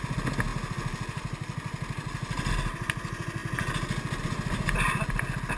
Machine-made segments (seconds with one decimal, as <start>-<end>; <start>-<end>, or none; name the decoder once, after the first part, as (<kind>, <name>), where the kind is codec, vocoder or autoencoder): none